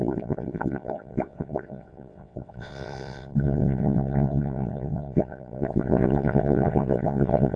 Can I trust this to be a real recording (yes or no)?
no